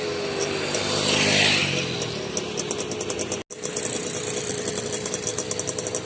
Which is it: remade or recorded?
recorded